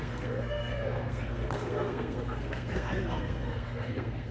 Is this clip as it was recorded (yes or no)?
no